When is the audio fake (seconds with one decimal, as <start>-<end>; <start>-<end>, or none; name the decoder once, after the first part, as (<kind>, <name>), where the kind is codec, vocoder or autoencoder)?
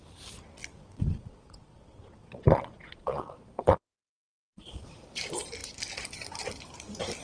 0.7-5.0 (vocoder, Vocos)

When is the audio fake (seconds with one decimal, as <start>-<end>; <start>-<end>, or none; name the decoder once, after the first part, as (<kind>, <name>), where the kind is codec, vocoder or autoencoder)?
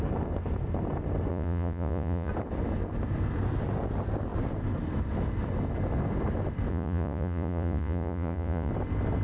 1.3-2.3 (vocoder, Vocos); 6.7-8.7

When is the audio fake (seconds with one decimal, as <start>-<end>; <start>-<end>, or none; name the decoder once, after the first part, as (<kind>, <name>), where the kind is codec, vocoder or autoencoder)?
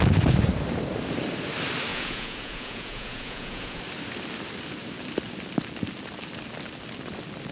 1.9-3.8 (vocoder, Vocos)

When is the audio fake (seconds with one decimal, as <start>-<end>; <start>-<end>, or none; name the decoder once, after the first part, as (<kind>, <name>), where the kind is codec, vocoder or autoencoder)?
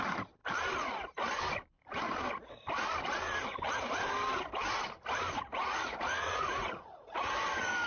5.5-7.3 (vocoder, Vocos)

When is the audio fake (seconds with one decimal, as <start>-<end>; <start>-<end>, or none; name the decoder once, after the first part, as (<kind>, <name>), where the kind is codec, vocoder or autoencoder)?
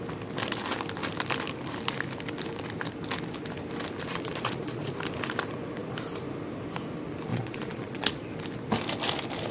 4.1-4.9 (vocoder, Vocos); 7.3-8.2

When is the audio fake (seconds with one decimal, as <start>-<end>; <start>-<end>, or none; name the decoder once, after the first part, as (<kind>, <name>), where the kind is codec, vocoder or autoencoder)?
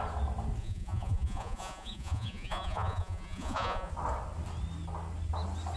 0.6-3.9 (vocoder, Vocos)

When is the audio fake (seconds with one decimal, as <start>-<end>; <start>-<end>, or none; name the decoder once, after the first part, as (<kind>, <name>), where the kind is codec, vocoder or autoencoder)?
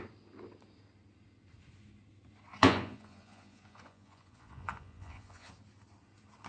2.5-5.5 (vocoder, Vocos)